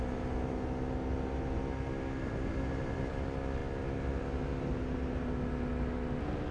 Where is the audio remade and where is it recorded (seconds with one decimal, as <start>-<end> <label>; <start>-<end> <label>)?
0.0-6.5 recorded